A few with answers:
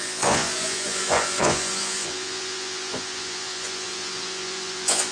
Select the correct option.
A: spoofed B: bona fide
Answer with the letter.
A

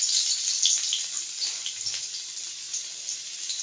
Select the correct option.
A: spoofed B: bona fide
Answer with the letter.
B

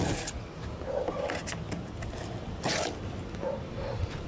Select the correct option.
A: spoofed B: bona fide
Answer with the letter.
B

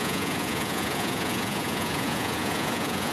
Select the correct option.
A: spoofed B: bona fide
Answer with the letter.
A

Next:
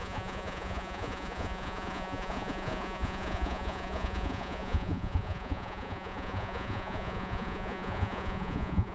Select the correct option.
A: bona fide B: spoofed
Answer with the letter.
B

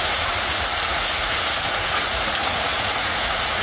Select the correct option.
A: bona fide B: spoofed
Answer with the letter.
B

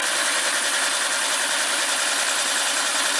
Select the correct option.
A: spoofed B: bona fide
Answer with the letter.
B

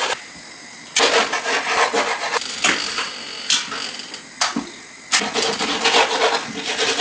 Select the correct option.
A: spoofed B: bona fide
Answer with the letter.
B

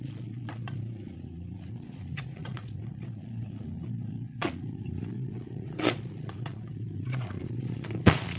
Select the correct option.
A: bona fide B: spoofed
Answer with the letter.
B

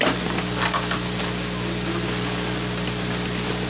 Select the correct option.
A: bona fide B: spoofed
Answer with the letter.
A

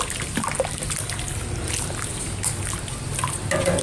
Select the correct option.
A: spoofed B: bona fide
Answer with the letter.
B